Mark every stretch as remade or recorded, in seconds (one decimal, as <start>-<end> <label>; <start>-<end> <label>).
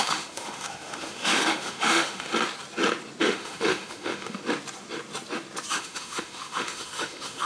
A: 0.0-2.3 remade; 2.3-3.2 recorded; 3.2-4.4 remade; 4.4-5.7 recorded; 5.7-7.5 remade